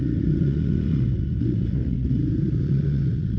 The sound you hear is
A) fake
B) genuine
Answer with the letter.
A